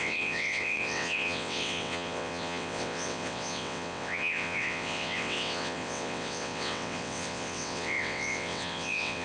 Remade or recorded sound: remade